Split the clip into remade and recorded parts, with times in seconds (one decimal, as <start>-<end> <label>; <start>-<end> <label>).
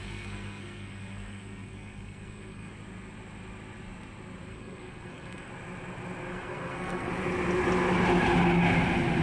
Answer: 0.0-2.7 remade; 2.7-4.5 recorded; 4.5-5.5 remade; 5.5-6.3 recorded; 6.3-7.1 remade; 7.1-9.2 recorded